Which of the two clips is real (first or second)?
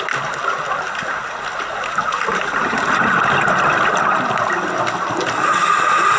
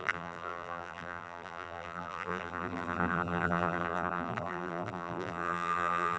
first